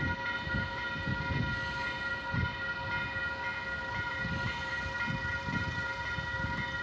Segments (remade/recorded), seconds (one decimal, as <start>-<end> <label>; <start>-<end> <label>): 0.0-1.1 remade; 1.1-1.9 recorded; 1.9-2.5 remade; 2.5-3.8 recorded; 3.8-6.8 remade